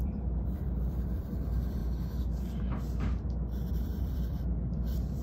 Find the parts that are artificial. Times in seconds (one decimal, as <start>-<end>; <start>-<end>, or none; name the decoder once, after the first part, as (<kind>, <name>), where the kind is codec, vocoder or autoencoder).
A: 0.0-1.8 (vocoder, BigVGAN v2); 3.7-5.2